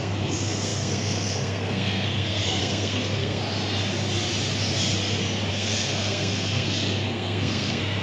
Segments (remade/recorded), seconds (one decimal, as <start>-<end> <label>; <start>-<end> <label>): 0.0-3.4 remade; 3.4-5.5 recorded; 5.5-8.0 remade